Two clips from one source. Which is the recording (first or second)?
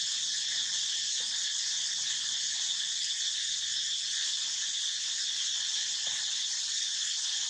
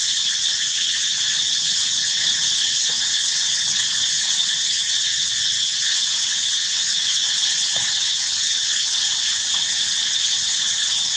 first